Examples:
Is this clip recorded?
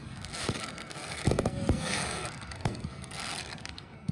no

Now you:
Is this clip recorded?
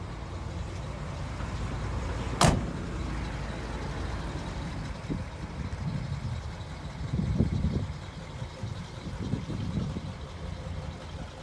yes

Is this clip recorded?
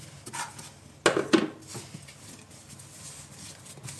yes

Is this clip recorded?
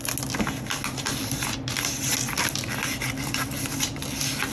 yes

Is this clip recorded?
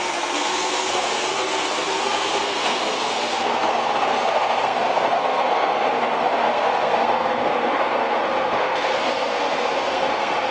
no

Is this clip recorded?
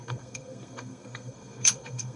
no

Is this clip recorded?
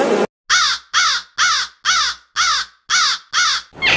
yes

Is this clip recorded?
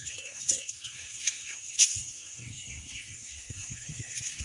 no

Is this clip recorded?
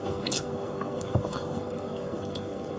no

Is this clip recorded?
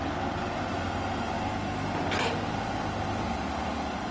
yes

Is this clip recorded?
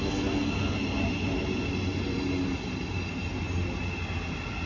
yes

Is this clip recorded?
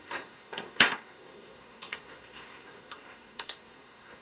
no